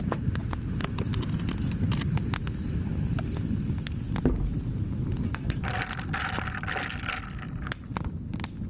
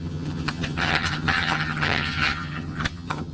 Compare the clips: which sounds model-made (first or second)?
second